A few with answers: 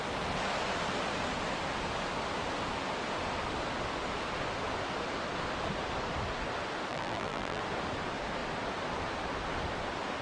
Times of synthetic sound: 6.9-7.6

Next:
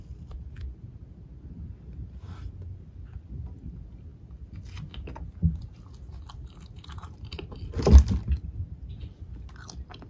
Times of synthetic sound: none

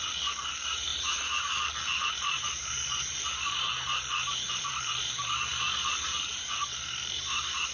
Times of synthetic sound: 0.0-7.7

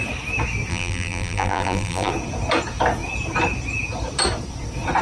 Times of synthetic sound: 0.7-2.1

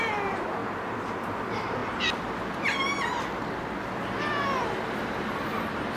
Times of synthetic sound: 0.0-0.6; 1.2-1.8; 5.4-6.0

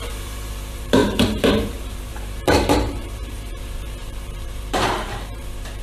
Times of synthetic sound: 0.0-5.8